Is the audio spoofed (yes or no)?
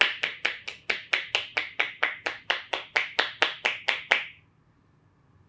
no